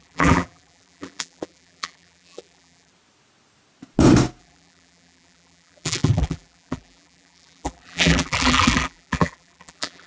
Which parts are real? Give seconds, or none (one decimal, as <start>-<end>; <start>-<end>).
2.9-4.4